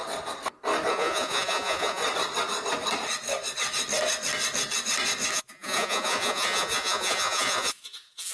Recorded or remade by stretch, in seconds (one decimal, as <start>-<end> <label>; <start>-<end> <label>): 0.0-0.9 recorded; 0.9-2.0 remade; 2.0-5.3 recorded; 5.3-8.3 remade